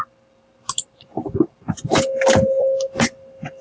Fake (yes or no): no